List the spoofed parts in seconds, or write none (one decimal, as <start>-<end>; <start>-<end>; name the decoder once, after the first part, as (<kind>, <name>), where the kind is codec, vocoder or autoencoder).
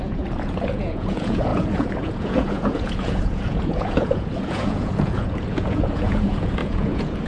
0.0-7.3 (vocoder, Vocos)